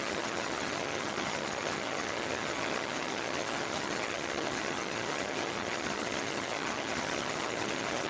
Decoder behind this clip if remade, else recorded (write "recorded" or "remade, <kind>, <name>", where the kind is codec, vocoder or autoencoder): remade, vocoder, HiFi-GAN